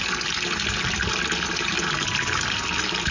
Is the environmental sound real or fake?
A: real